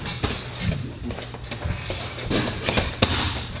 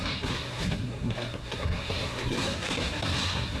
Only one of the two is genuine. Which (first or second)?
first